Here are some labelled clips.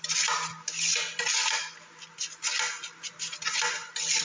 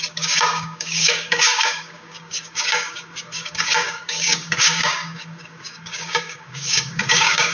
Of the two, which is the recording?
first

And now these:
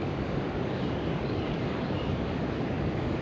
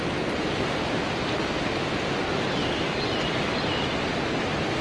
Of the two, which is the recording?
second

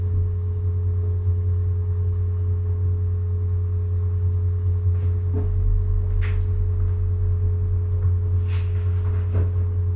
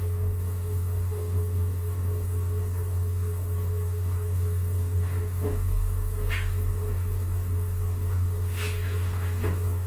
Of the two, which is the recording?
first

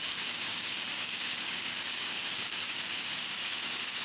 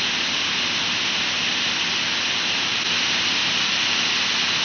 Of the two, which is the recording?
second